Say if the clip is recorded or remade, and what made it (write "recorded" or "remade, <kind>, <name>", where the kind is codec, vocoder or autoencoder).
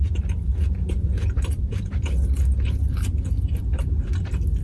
remade, vocoder, BigVGAN v2